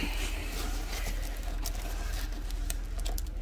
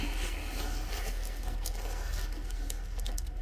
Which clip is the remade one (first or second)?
second